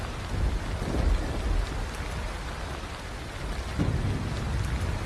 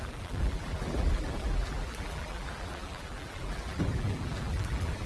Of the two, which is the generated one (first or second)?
second